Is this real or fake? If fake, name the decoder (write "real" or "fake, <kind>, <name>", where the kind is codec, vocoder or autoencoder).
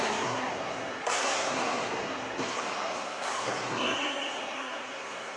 fake, codec, SNAC